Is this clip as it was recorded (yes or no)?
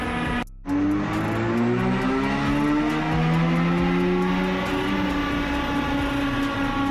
yes